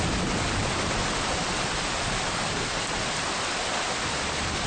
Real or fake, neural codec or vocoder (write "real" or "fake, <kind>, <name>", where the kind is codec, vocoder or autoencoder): real